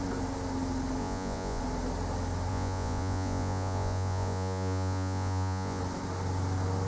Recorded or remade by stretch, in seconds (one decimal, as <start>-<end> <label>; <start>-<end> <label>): 0.0-1.0 recorded; 1.0-1.6 remade; 1.6-2.5 recorded; 2.5-5.8 remade; 5.8-6.9 recorded